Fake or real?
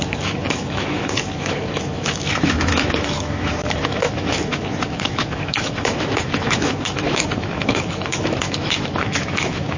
fake